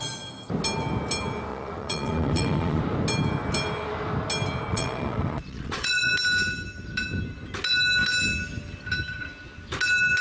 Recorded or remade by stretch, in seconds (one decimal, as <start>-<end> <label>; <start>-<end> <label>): 0.0-1.5 recorded; 1.5-2.8 remade; 2.8-4.7 recorded; 4.7-6.1 remade; 6.1-10.2 recorded